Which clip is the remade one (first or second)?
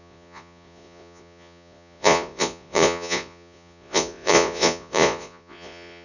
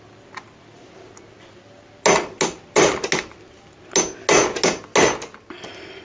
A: first